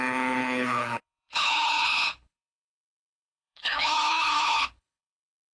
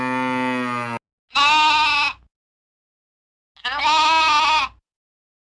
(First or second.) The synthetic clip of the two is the first